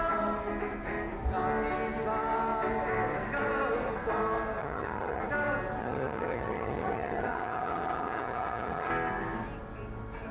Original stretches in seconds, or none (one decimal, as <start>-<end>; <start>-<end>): 0.0-4.6; 5.2-5.8; 8.9-10.3